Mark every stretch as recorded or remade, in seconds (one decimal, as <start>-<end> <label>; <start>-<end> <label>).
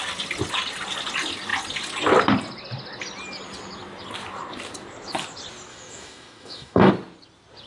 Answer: 0.0-5.7 recorded; 5.7-6.9 remade; 6.9-7.7 recorded